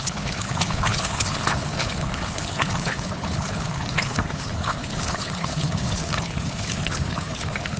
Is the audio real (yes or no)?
no